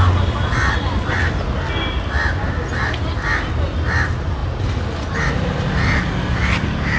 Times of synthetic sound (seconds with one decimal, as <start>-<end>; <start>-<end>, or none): none